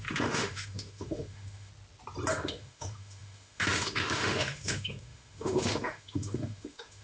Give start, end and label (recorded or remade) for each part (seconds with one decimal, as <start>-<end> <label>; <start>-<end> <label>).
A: 0.0-1.7 remade; 1.7-2.3 recorded; 2.3-7.0 remade